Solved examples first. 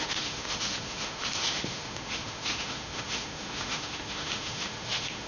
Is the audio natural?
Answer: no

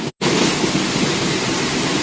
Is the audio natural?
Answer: yes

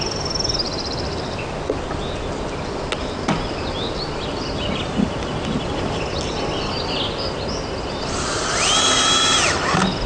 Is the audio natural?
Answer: yes